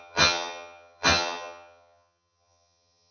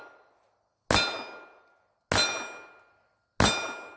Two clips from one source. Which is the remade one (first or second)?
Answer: first